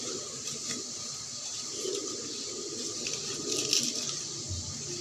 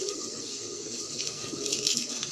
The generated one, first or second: second